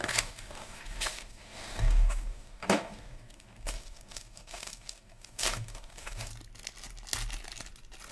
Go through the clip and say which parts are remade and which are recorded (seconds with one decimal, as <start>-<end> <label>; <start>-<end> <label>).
0.0-6.3 remade; 6.3-8.1 recorded